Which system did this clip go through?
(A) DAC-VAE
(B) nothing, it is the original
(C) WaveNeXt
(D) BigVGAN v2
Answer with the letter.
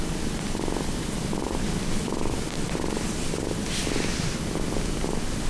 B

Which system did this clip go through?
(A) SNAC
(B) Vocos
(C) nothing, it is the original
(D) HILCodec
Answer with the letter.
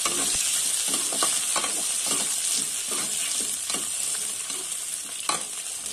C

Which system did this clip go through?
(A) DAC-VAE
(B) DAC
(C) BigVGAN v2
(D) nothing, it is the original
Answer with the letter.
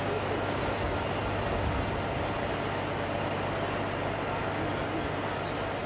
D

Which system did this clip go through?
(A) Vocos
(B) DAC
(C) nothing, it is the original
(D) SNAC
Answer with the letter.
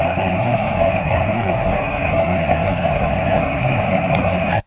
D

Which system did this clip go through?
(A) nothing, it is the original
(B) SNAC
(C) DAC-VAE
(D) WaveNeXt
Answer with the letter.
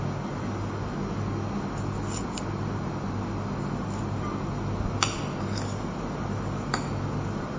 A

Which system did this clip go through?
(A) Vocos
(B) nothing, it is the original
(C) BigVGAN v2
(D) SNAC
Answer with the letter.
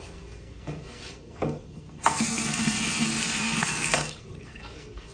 D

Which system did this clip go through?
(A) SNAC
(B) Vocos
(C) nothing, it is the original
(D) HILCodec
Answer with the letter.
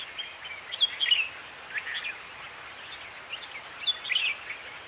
C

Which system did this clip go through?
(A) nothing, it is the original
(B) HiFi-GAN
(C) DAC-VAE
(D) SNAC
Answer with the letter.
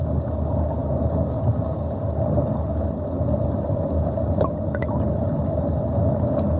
A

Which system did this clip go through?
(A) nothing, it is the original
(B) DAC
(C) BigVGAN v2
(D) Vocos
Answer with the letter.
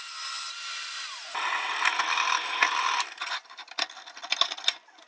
A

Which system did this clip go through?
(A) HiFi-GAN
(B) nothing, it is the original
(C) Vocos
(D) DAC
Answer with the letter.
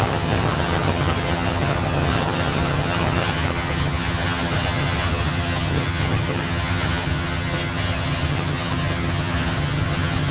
A